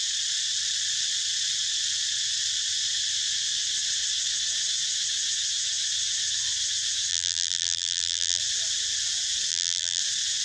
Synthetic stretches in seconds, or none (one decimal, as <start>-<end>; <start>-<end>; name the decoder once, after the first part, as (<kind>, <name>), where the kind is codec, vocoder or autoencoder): 7.1-8.4 (vocoder, BigVGAN v2); 9.5-10.0